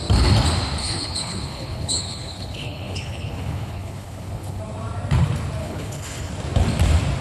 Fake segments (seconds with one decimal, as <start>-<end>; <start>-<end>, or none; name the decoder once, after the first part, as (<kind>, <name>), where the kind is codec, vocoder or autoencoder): 0.8-4.6 (codec, HILCodec); 5.6-6.3